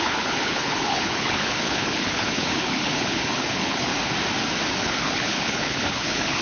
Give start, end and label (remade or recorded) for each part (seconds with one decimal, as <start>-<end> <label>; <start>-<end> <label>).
0.0-3.9 remade; 3.9-4.8 recorded; 4.8-6.4 remade

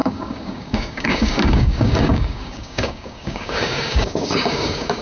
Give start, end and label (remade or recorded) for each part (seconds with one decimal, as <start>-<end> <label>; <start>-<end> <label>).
0.0-5.0 remade

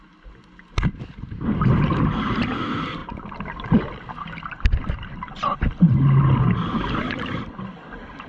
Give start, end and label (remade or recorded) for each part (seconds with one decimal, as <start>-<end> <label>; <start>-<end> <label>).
0.0-8.3 recorded

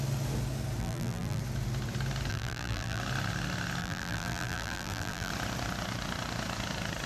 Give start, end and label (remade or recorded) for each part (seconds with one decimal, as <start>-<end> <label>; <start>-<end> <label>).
0.0-0.8 recorded; 0.8-1.4 remade; 1.4-2.3 recorded; 2.3-3.0 remade; 3.0-3.8 recorded; 3.8-5.3 remade; 5.3-7.1 recorded

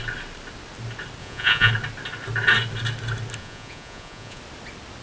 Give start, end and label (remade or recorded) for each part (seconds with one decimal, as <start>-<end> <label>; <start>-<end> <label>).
0.0-1.2 recorded; 1.2-1.7 remade; 1.7-3.4 recorded; 3.4-4.4 remade; 4.4-5.0 recorded

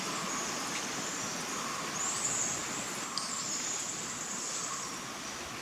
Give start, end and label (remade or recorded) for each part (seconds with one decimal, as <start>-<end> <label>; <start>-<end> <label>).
0.0-5.6 recorded